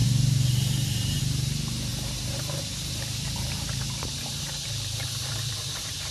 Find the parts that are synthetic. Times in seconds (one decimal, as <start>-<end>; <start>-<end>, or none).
0.0-1.2; 1.9-4.4; 5.2-6.1